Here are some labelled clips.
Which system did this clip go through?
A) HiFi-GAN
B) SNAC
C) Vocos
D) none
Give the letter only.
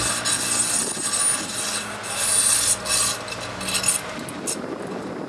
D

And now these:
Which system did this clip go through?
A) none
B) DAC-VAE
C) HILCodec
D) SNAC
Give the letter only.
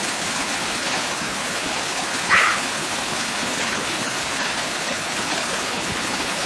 C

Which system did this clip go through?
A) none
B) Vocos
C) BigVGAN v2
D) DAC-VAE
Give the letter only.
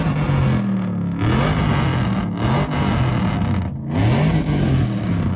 A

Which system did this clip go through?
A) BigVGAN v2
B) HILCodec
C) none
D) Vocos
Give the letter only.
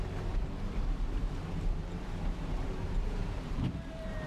A